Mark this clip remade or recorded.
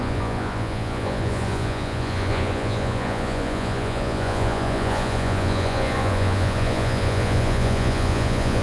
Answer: remade